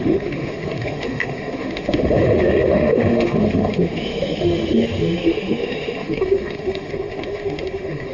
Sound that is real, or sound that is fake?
fake